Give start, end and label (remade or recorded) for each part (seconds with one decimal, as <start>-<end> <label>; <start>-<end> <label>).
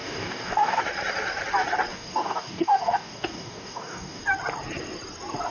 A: 0.0-0.8 remade; 0.8-1.9 recorded; 1.9-4.2 remade; 4.2-5.5 recorded